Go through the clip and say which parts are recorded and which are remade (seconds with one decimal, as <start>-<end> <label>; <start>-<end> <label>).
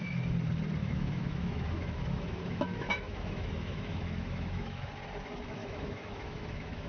0.0-0.8 recorded; 0.8-4.9 remade; 4.9-5.6 recorded; 5.6-6.9 remade